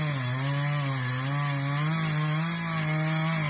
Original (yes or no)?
yes